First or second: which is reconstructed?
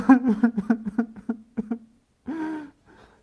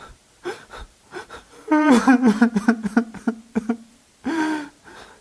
second